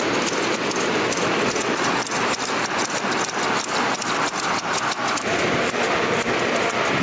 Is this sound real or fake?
fake